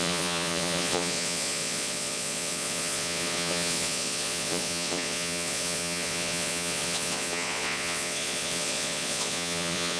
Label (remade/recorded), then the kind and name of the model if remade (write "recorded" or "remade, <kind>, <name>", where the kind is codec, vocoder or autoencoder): remade, vocoder, Vocos